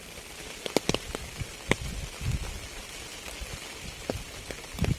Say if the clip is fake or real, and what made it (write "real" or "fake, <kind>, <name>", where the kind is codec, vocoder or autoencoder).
real